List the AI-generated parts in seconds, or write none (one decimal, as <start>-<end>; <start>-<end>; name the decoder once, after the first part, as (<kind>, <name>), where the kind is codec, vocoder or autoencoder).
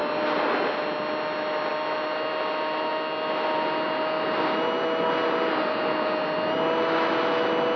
none